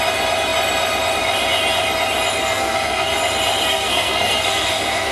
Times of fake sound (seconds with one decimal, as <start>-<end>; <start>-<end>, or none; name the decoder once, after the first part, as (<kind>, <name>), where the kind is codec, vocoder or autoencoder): 2.4-3.2 (codec, SNAC); 3.7-5.1